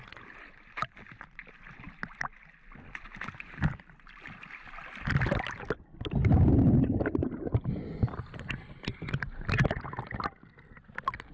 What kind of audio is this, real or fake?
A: real